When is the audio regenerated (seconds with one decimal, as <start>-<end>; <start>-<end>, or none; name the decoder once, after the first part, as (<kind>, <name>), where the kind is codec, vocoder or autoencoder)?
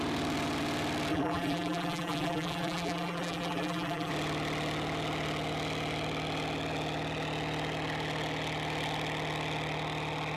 1.1-4.1 (vocoder, BigVGAN v2)